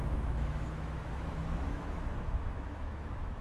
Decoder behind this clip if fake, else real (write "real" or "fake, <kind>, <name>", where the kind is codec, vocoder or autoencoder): fake, autoencoder, DAC-VAE